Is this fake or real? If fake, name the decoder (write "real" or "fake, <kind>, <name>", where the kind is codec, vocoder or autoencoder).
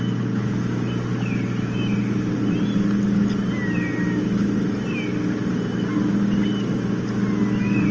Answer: real